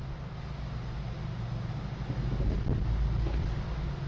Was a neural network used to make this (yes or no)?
no